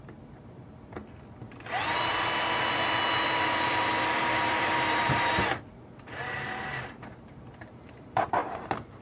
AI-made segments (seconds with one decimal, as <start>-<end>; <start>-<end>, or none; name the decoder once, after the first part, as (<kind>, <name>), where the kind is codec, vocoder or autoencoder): 0.0-1.0 (vocoder, BigVGAN v2); 4.2-9.0